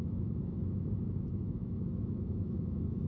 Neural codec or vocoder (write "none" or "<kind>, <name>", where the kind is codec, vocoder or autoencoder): autoencoder, DAC-VAE